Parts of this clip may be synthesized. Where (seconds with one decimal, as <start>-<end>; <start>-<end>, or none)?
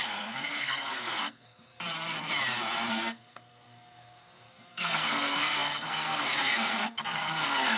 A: 0.0-1.7; 2.9-7.8